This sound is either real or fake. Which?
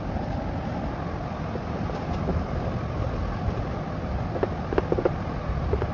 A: real